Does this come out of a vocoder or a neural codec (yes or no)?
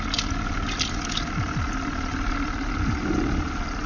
no